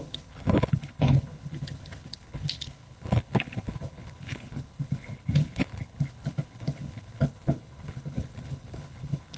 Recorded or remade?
remade